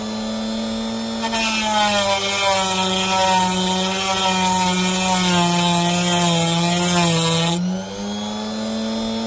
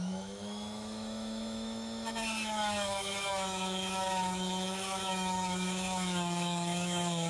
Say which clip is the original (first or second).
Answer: first